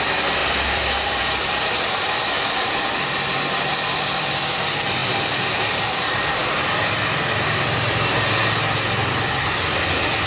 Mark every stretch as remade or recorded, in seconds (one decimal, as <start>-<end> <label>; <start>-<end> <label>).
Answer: 0.0-5.0 remade; 5.0-5.9 recorded; 5.9-6.4 remade; 6.4-7.3 recorded; 7.3-8.4 remade; 8.4-9.1 recorded; 9.1-10.3 remade